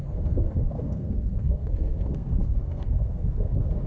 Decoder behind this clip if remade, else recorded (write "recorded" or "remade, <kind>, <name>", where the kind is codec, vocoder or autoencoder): remade, codec, SNAC